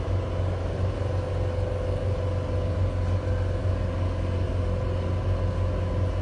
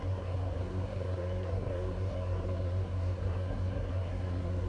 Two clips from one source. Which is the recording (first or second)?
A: first